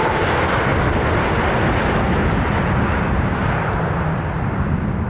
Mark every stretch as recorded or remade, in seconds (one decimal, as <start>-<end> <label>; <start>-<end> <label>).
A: 0.0-5.1 recorded